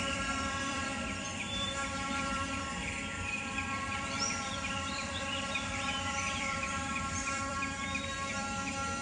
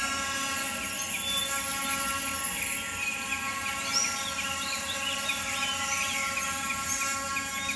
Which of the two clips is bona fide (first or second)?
second